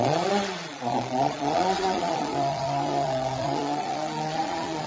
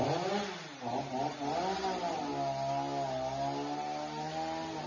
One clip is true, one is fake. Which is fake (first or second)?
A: first